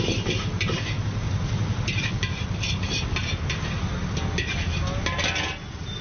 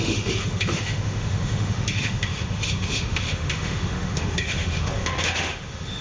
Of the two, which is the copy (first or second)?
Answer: second